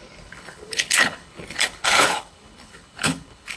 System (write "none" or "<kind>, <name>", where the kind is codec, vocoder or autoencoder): codec, HILCodec